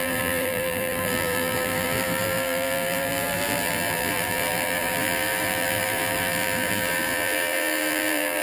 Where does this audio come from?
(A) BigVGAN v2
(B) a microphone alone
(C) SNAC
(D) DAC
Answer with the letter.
A